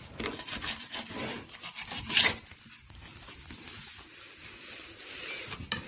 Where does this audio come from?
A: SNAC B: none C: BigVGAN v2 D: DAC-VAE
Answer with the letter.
B